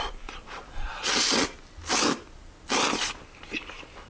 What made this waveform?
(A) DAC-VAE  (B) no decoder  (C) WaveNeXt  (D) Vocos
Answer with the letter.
B